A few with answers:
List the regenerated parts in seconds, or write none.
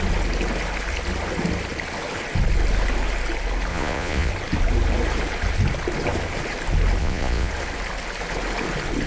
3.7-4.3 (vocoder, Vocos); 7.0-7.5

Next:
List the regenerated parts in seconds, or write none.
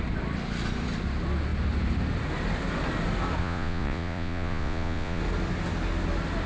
3.4-5.2 (vocoder, Vocos)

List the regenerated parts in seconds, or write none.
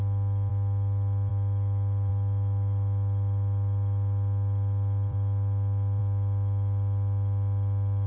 2.1-6.0 (vocoder, BigVGAN v2)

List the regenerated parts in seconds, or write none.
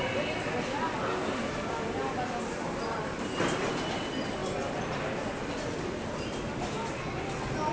none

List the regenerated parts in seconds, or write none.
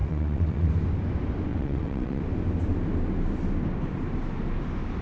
0.0-0.7 (vocoder, WaveNeXt); 1.5-2.2